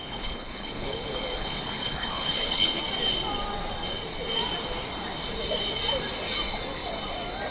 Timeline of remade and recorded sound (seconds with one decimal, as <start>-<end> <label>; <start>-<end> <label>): 0.0-2.8 remade; 2.8-7.5 recorded